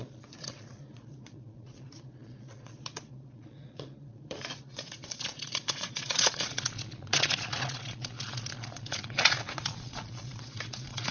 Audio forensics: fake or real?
fake